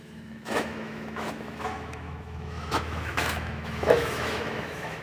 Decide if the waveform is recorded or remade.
remade